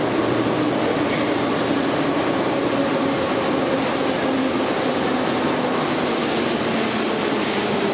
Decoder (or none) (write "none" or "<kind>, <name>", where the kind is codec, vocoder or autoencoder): none